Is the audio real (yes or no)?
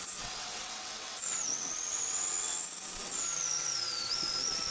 no